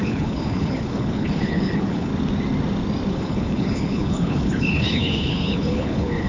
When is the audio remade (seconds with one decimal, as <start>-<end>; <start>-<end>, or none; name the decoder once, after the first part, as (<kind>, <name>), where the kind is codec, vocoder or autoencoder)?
0.0-2.1 (codec, HILCodec); 3.1-6.3